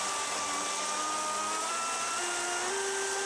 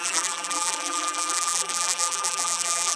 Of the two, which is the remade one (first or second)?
second